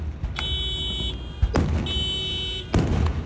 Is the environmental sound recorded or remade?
recorded